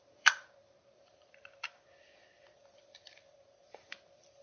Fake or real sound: fake